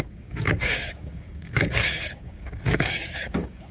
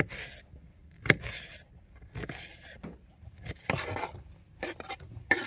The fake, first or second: first